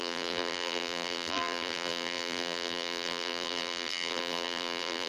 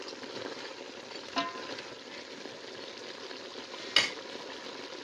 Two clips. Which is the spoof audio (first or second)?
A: first